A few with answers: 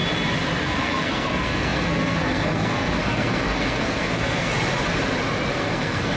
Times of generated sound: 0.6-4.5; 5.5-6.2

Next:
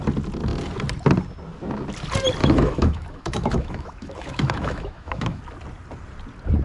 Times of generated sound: 2.4-5.4

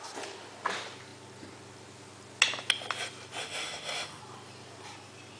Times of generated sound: 3.4-4.2

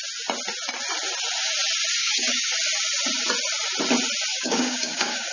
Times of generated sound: 2.0-2.5; 4.3-5.3